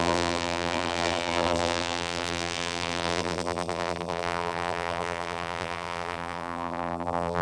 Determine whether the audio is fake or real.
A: fake